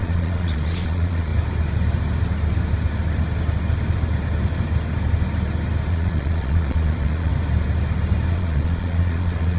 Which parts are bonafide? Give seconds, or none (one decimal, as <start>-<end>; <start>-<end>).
1.3-5.9; 7.3-8.3